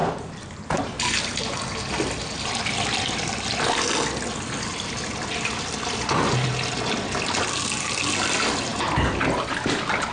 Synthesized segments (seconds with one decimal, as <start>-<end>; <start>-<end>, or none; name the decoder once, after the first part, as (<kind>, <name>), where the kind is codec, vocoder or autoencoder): none